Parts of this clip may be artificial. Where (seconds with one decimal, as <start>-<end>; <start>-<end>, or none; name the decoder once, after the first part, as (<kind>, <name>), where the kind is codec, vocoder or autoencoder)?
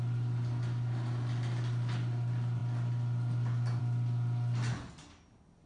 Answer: none